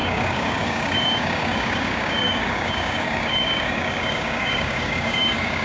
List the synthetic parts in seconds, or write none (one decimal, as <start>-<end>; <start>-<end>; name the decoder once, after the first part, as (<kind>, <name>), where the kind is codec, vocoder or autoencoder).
0.0-5.6 (codec, DAC)